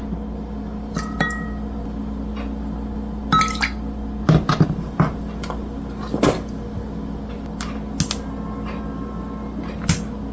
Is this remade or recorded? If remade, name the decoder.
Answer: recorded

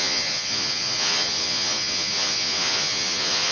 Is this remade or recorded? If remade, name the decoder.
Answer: remade, vocoder, Vocos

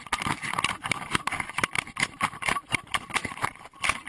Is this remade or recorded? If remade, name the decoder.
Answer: recorded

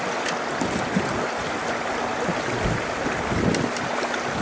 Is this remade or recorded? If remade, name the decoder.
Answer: recorded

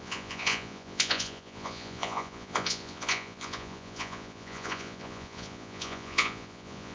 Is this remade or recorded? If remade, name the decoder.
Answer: remade, vocoder, Vocos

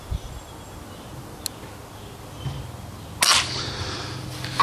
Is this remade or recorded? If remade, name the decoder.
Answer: recorded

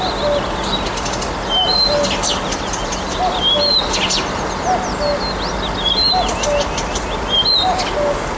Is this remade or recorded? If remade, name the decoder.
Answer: recorded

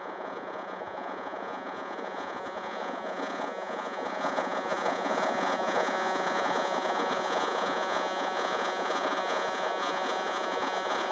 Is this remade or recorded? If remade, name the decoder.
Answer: remade, vocoder, Vocos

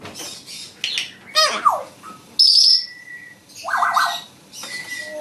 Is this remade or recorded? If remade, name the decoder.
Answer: recorded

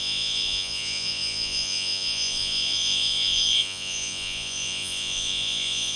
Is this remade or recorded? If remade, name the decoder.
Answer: remade, vocoder, Vocos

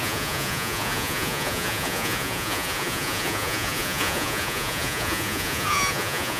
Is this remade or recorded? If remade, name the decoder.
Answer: remade, vocoder, Vocos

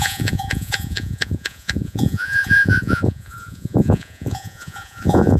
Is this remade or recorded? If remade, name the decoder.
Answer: remade, vocoder, Vocos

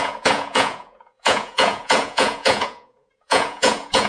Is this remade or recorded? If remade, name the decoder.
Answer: remade, vocoder, Vocos